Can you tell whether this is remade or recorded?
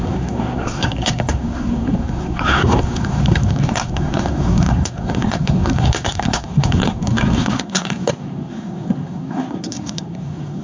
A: remade